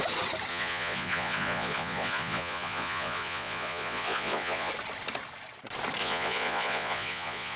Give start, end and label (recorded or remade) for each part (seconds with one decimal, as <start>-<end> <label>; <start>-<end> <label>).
0.0-0.5 recorded; 0.5-4.7 remade; 4.7-6.0 recorded; 6.0-7.6 remade